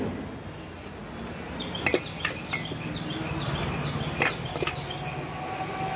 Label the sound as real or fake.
real